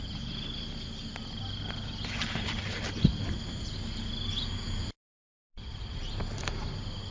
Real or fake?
real